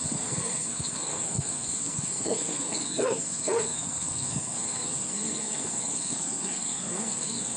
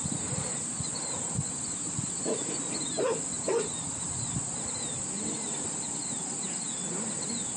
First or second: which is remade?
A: first